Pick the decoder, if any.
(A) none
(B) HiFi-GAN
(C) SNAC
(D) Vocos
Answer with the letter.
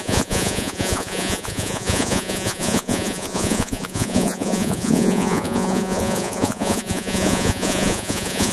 D